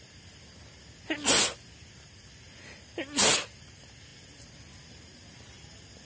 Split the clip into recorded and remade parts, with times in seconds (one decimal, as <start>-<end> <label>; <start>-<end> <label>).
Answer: 0.0-6.1 recorded